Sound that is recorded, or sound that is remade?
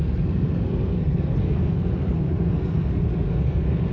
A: remade